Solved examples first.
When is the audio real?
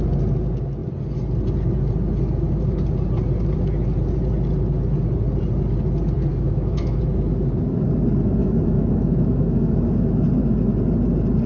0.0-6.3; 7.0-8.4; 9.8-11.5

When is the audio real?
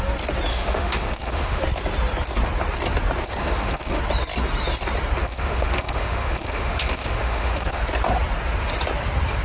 0.0-0.5; 1.6-3.4; 4.0-5.2; 7.8-9.4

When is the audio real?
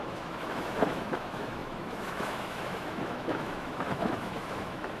none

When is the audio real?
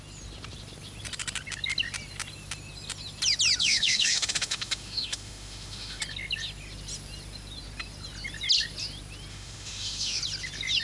0.0-3.6; 6.0-9.3; 10.2-10.8